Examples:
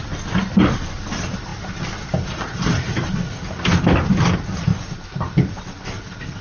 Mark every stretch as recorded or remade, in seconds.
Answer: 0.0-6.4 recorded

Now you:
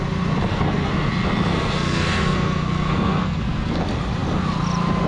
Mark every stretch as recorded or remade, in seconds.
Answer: 0.0-0.5 recorded; 0.5-1.1 remade; 1.1-1.5 recorded; 1.5-3.8 remade; 3.8-5.1 recorded